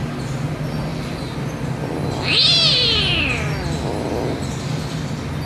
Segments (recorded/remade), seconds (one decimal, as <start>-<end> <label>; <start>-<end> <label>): 0.0-5.5 recorded